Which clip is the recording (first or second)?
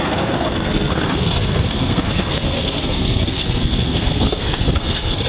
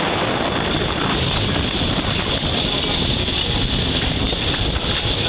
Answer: second